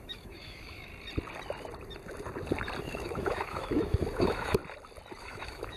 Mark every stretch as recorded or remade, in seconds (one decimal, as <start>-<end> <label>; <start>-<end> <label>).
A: 0.0-0.9 remade; 0.9-2.8 recorded; 2.8-4.6 remade; 4.6-5.2 recorded; 5.2-5.8 remade